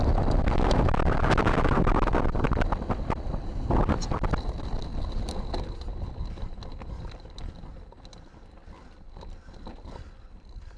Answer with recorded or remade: recorded